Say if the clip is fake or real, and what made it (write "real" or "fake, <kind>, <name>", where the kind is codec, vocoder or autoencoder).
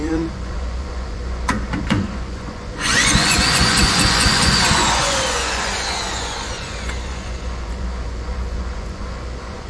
fake, vocoder, Vocos